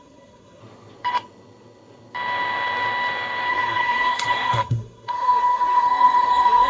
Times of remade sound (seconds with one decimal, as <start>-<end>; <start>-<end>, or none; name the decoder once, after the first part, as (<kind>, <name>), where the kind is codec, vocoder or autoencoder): 0.0-0.6 (codec, SNAC); 3.5-6.7